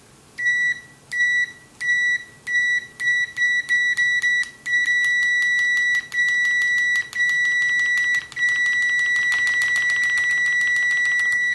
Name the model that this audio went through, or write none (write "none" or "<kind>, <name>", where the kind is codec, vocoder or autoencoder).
none